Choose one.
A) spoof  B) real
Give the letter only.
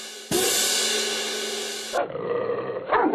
B